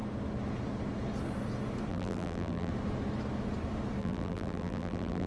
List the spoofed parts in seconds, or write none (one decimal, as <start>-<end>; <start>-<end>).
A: 1.9-2.7; 4.0-5.3

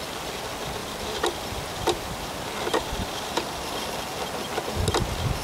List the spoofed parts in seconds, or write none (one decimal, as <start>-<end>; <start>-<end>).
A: 0.8-4.0

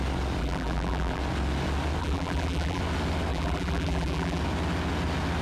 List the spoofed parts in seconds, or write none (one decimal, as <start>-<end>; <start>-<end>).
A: 0.4-1.2; 2.0-2.8; 3.3-4.4

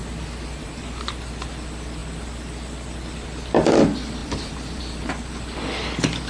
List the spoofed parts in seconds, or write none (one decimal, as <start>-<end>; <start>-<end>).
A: 0.0-1.1; 4.2-4.8

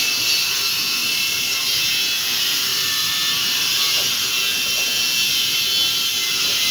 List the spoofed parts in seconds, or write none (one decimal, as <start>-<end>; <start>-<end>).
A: 1.0-1.6; 2.7-4.3

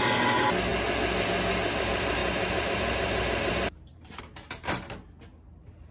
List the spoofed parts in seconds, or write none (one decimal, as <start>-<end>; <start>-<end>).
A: 2.2-4.2

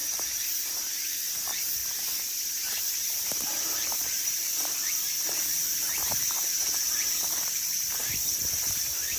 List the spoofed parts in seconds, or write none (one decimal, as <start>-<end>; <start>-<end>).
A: 0.0-1.8; 2.8-9.2

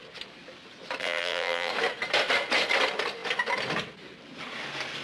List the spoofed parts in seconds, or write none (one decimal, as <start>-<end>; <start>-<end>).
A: 1.0-1.7